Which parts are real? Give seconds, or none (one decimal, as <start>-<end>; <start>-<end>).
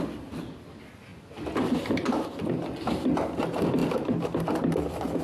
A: 0.0-5.2